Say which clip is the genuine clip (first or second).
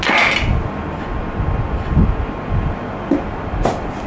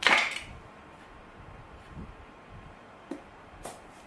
first